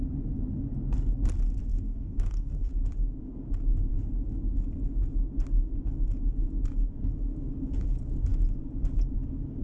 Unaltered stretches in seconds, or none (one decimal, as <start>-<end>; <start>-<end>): 0.0-1.7; 2.7-9.6